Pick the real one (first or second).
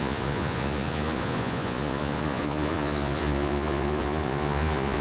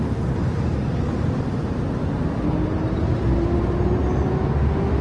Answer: second